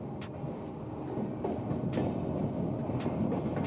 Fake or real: real